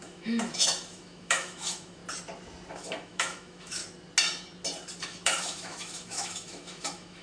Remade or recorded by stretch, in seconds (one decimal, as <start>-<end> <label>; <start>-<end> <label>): 0.0-2.0 remade; 2.0-2.7 recorded; 2.7-3.8 remade; 3.8-5.0 recorded; 5.0-7.2 remade

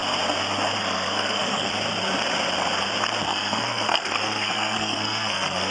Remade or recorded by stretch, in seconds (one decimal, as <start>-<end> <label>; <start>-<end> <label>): 0.0-0.8 recorded; 0.8-1.7 remade; 1.7-3.2 recorded; 3.2-5.7 remade

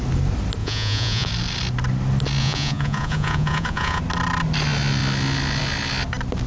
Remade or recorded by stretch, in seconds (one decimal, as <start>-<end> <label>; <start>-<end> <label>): 0.0-0.6 recorded; 0.6-1.3 remade; 1.3-2.4 recorded; 2.4-4.0 remade; 4.0-6.5 recorded

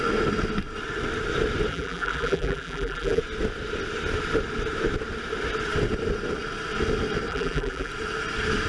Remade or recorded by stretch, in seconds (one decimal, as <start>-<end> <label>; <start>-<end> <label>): 0.0-1.7 recorded; 1.7-3.2 remade; 3.2-7.3 recorded; 7.3-7.9 remade; 7.9-8.7 recorded

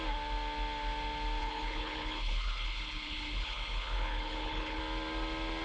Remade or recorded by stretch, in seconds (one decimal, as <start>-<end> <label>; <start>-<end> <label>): 0.0-1.4 recorded; 1.4-4.8 remade; 4.8-5.6 recorded

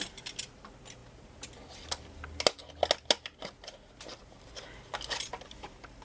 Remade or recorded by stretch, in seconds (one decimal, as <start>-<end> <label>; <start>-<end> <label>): 0.0-4.2 recorded; 4.2-4.8 remade; 4.8-6.0 recorded